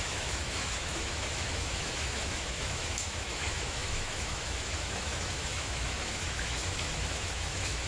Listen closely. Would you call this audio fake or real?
fake